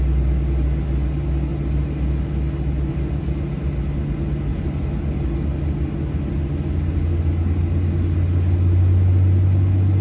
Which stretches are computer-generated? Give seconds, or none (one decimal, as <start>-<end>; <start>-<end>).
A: 4.5-5.0